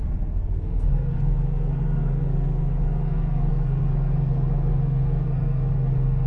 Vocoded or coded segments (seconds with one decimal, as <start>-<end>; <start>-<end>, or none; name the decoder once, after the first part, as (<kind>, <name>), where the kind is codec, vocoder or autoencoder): 0.0-6.3 (codec, SNAC)